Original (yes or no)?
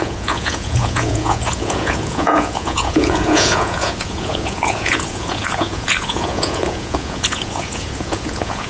no